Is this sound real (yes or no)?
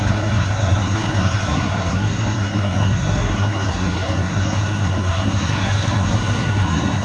no